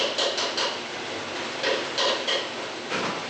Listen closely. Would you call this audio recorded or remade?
recorded